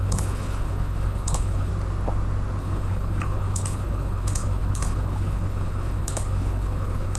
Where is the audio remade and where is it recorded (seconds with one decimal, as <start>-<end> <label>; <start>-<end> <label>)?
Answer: 0.0-1.7 remade; 1.7-2.6 recorded; 2.6-7.2 remade